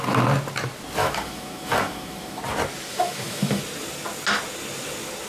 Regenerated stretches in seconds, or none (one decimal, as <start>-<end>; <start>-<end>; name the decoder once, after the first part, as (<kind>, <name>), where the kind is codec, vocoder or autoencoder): 1.0-2.4 (autoencoder, DAC-VAE); 2.9-3.6

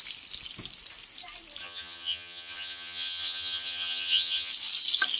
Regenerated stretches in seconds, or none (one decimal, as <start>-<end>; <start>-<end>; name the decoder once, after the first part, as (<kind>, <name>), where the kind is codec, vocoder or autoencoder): 1.6-4.5 (vocoder, HiFi-GAN)

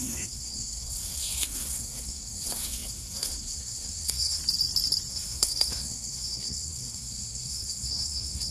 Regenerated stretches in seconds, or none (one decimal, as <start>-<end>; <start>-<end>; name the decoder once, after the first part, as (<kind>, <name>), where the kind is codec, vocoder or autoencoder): 0.0-4.4 (codec, SNAC); 5.1-8.5

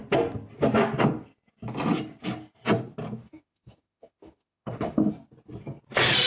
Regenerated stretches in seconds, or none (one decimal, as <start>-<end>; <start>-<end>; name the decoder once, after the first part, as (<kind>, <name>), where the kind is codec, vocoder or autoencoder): 3.2-5.1 (autoencoder, DAC-VAE)